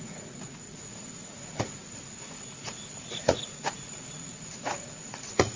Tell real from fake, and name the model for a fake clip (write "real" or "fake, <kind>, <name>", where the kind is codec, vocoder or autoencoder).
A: fake, vocoder, Vocos